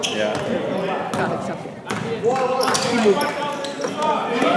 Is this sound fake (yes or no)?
no